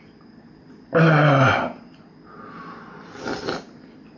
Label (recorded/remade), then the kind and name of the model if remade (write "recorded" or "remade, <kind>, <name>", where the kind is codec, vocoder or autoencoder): recorded